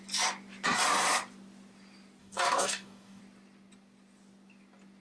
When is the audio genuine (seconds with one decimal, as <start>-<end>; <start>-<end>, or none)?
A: 0.0-2.2; 3.2-5.0